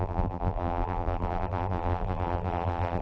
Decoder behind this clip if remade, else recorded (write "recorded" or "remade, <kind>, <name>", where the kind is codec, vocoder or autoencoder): remade, vocoder, BigVGAN v2